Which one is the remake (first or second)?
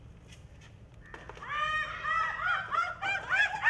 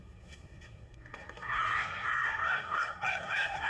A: second